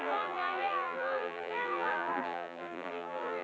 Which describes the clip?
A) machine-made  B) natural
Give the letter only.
A